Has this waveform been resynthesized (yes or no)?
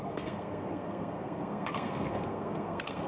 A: yes